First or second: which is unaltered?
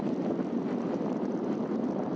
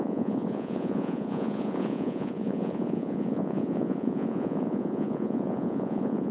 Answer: first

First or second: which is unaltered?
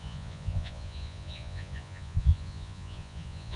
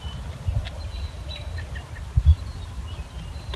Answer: second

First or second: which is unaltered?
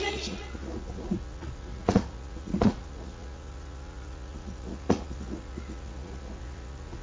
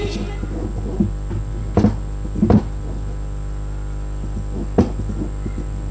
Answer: second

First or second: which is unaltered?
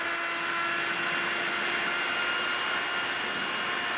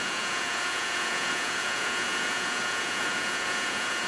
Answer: first